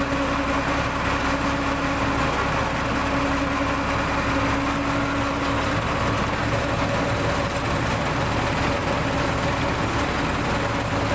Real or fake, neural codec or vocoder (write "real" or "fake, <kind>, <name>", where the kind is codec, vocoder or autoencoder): real